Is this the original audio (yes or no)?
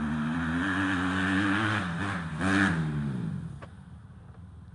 yes